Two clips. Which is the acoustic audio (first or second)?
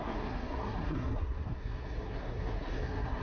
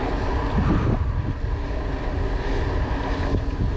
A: second